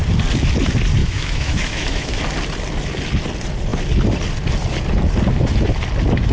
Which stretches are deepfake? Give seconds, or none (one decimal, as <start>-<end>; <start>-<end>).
1.0-2.2